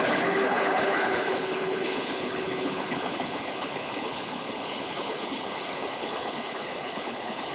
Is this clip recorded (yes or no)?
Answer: no